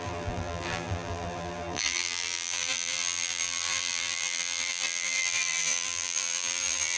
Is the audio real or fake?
fake